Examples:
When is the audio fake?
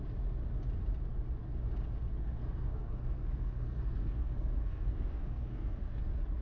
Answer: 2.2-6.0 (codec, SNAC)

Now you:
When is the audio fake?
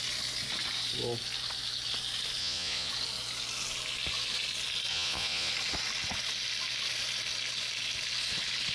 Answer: 2.4-2.9 (vocoder, Vocos); 4.9-5.5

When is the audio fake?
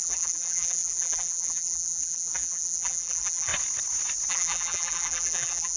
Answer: 0.0-3.5 (vocoder, BigVGAN v2); 4.3-5.8